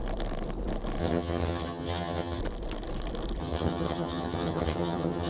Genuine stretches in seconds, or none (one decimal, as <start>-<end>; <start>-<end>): 0.0-1.0; 2.4-3.4